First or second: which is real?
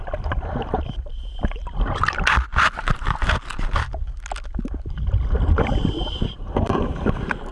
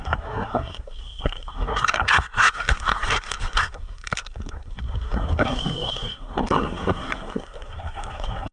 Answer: first